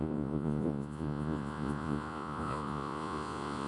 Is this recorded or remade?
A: remade